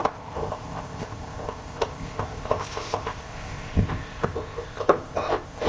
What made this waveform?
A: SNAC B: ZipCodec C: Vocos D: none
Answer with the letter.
B